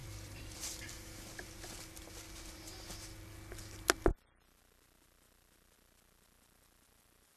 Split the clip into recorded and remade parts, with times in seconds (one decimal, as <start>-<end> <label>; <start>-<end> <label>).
0.0-0.9 remade; 0.9-7.4 recorded

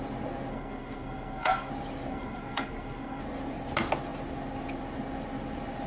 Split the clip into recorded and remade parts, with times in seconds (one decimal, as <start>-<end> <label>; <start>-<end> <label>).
0.0-0.5 recorded; 0.5-1.7 remade; 1.7-2.1 recorded; 2.1-3.2 remade; 3.2-5.9 recorded

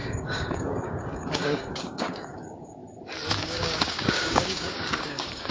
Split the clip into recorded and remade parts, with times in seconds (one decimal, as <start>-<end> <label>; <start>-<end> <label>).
0.0-2.8 remade; 2.8-3.4 recorded; 3.4-5.5 remade